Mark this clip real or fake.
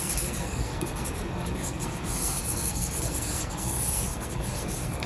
fake